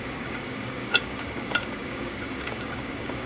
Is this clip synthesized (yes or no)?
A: yes